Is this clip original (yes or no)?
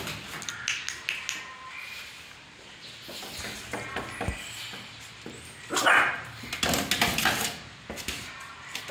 yes